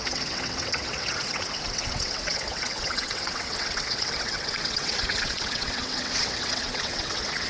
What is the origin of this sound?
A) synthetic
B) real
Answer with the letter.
A